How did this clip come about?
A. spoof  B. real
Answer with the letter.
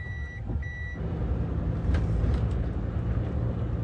B